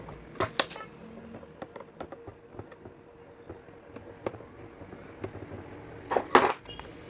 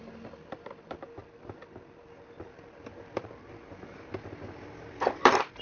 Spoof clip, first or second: second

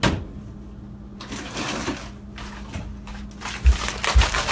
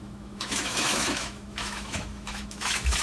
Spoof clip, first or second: second